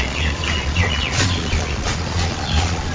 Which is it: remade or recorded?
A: remade